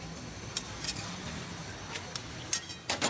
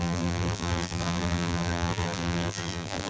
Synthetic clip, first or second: second